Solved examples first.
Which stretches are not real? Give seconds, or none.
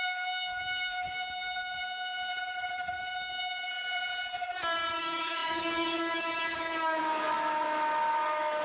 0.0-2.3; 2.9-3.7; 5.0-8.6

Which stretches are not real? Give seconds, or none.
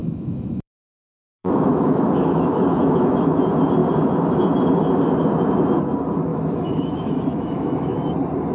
0.0-3.4; 6.3-8.1